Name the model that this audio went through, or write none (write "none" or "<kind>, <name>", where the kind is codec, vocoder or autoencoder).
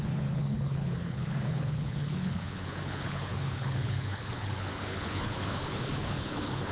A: codec, HILCodec